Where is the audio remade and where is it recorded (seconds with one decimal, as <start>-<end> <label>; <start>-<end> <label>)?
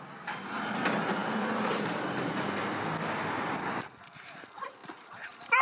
0.0-5.6 recorded